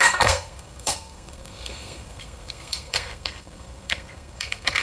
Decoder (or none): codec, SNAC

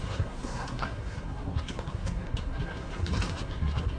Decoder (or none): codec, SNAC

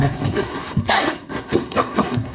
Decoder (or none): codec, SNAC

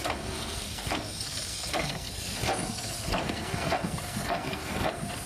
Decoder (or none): codec, SNAC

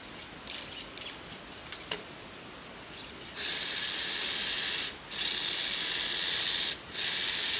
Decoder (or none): none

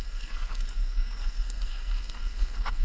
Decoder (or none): codec, SNAC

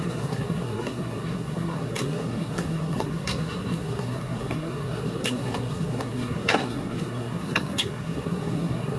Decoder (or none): codec, SNAC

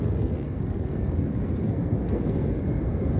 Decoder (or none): codec, SNAC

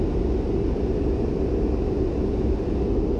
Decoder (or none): none